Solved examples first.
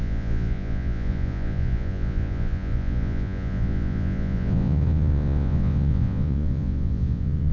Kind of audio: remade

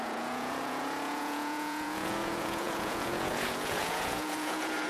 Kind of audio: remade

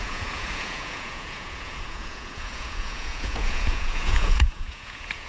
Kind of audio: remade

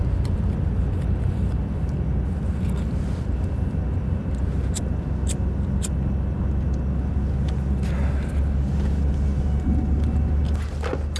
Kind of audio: recorded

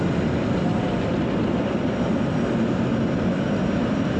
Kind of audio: recorded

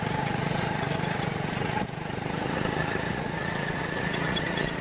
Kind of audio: remade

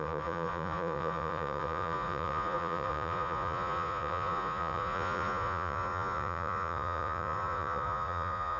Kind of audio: remade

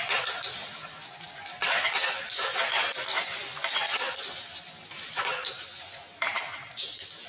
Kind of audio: recorded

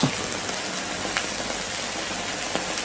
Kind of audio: recorded